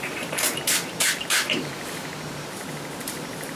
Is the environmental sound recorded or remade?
remade